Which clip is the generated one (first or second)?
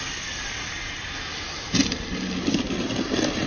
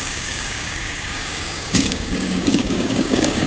second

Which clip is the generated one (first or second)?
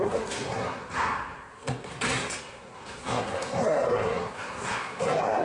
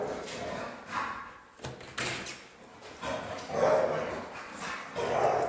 first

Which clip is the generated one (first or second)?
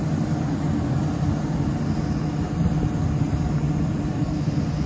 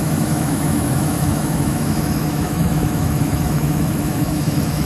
second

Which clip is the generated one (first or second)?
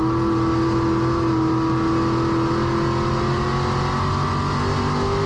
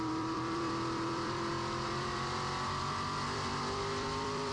second